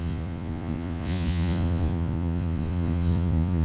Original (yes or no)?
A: no